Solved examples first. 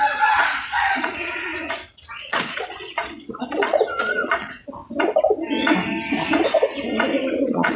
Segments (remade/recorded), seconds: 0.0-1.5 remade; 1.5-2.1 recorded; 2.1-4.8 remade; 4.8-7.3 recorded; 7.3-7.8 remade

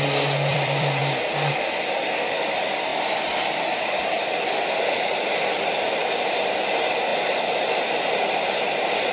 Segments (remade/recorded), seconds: 0.0-0.5 recorded; 0.5-1.0 remade; 1.0-2.9 recorded; 2.9-4.8 remade; 4.8-7.1 recorded; 7.1-9.1 remade

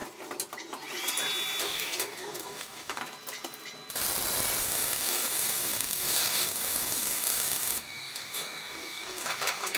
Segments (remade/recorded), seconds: 0.0-1.6 recorded; 1.6-3.0 remade; 3.0-4.6 recorded; 4.6-9.8 remade

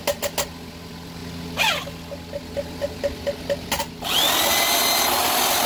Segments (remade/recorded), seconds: 0.0-5.7 recorded

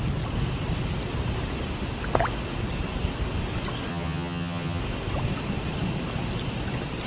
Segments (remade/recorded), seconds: 0.0-3.9 recorded; 3.9-4.8 remade; 4.8-7.1 recorded

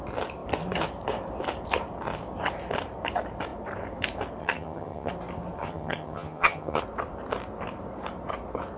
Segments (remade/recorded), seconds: 0.0-4.4 recorded; 4.4-5.1 remade; 5.1-5.6 recorded; 5.6-6.8 remade; 6.8-8.8 recorded

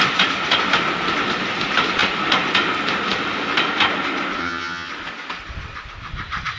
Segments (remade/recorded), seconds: 0.0-4.4 recorded; 4.4-4.9 remade; 4.9-6.6 recorded